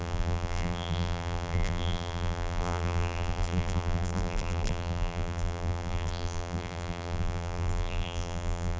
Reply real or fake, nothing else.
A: fake